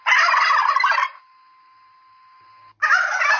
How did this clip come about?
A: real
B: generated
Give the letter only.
A